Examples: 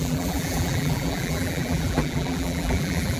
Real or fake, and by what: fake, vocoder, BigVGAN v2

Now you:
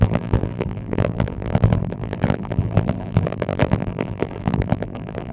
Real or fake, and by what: fake, vocoder, BigVGAN v2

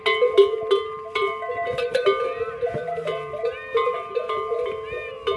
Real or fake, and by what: real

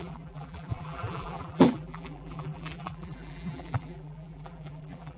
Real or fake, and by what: fake, vocoder, BigVGAN v2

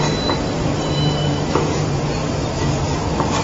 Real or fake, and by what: fake, vocoder, BigVGAN v2